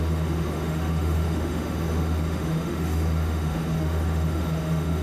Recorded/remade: remade